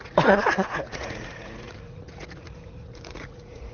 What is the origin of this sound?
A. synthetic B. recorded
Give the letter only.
A